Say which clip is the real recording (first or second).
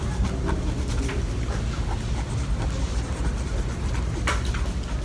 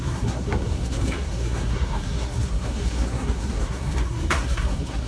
first